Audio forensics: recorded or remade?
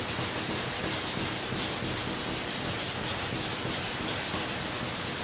recorded